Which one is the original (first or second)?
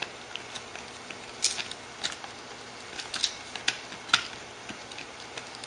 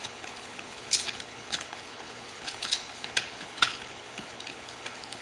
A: first